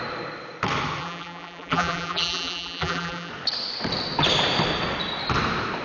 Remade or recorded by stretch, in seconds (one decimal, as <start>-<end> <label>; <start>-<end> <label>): 0.0-1.0 recorded; 1.0-3.3 remade; 3.3-5.8 recorded